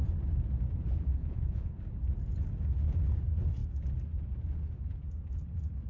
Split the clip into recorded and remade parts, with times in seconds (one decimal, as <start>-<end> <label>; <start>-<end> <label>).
0.0-1.2 recorded; 1.2-1.7 remade; 1.7-5.9 recorded